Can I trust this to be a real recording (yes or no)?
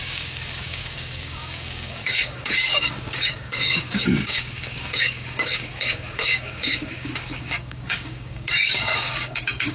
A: no